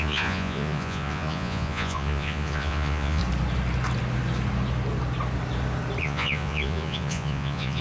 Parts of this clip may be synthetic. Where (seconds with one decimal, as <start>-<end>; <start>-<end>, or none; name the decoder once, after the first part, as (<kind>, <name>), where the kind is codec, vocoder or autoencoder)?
0.0-3.2 (vocoder, Vocos); 6.0-7.8

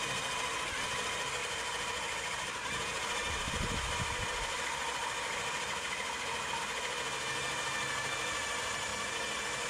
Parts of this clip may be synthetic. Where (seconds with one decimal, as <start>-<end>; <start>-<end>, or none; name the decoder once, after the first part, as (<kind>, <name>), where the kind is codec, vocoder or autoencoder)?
none

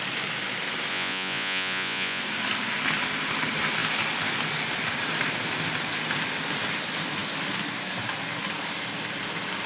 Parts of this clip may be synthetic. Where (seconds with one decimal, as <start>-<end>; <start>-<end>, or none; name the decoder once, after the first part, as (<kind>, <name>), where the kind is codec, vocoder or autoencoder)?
0.9-2.2 (vocoder, Vocos)

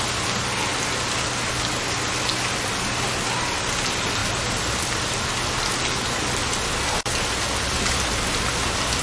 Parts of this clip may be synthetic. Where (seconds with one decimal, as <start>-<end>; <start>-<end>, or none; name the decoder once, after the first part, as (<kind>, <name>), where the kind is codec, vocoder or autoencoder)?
none